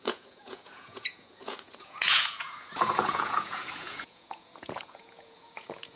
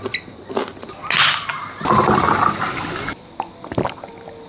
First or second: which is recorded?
second